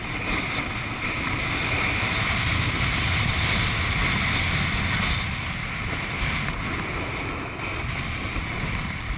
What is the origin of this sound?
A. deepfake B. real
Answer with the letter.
B